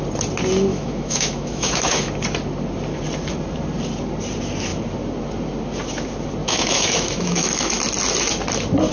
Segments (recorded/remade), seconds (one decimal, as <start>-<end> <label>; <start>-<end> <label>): 0.0-0.7 recorded; 0.7-2.1 remade; 2.1-6.4 recorded; 6.4-7.8 remade; 7.8-8.9 recorded